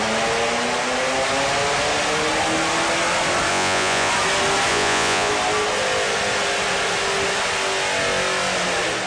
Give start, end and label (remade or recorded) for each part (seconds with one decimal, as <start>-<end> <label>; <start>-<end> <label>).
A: 0.0-3.5 recorded; 3.5-4.1 remade; 4.1-4.7 recorded; 4.7-5.3 remade; 5.3-9.1 recorded